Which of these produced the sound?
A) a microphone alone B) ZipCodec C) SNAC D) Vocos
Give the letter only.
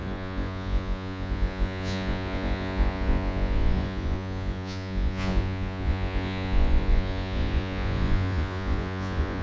D